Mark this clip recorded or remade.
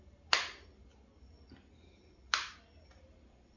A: recorded